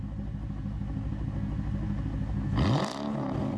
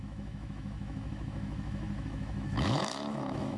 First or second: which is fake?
second